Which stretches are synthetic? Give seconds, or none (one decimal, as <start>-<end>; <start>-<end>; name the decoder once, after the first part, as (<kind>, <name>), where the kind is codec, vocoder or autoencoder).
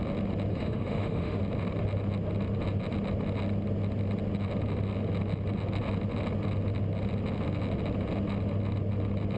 0.5-1.4 (autoencoder, DAC-VAE)